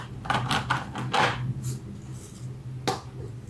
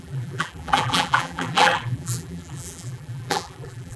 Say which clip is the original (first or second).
first